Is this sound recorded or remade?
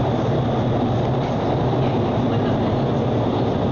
recorded